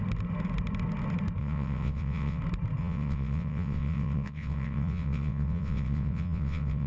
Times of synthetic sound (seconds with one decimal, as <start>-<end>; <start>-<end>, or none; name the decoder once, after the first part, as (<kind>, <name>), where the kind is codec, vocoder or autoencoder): 1.4-2.4 (vocoder, WaveNeXt); 2.8-6.9